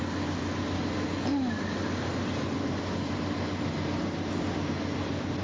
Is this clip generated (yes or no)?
no